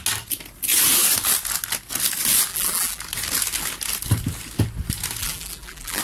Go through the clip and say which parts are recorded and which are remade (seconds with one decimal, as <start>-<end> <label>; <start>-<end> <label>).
0.0-2.5 recorded; 2.5-3.0 remade; 3.0-5.2 recorded; 5.2-6.0 remade